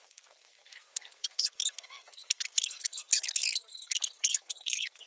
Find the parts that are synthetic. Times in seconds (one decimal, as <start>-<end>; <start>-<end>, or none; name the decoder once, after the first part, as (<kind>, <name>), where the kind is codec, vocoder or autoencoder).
0.0-5.1 (codec, SNAC)